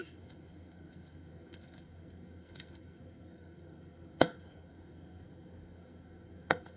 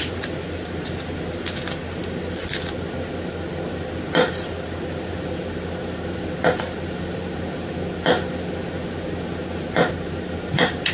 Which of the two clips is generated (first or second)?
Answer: first